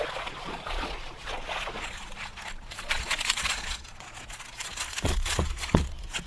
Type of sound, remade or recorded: remade